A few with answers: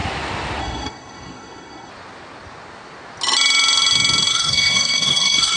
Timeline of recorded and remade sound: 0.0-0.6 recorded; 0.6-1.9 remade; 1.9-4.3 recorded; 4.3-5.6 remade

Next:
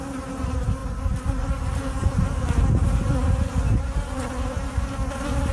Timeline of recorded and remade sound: 0.0-5.5 recorded

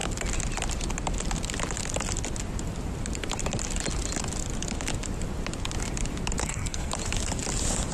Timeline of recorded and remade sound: 0.0-6.4 recorded; 6.4-6.9 remade; 6.9-7.9 recorded

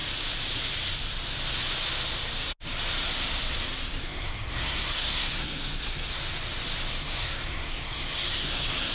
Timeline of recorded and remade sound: 0.0-4.0 recorded; 4.0-6.2 remade; 6.2-7.0 recorded; 7.0-8.9 remade

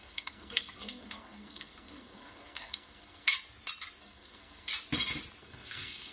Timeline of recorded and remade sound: 0.0-3.3 remade; 3.3-4.0 recorded; 4.0-4.7 remade; 4.7-5.4 recorded; 5.4-6.1 remade

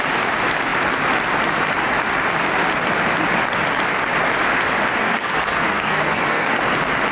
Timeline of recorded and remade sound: 0.0-5.0 recorded; 5.0-6.6 remade; 6.6-7.1 recorded

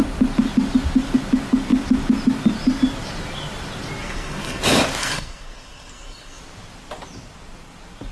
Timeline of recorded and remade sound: 0.0-4.0 recorded; 4.0-4.6 remade; 4.6-5.0 recorded; 5.0-6.4 remade; 6.4-8.1 recorded

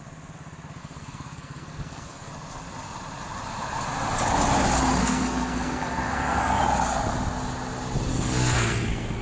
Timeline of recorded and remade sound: 0.0-0.8 recorded; 0.8-2.3 remade; 2.3-5.0 recorded; 5.0-6.6 remade; 6.6-8.1 recorded; 8.1-9.2 remade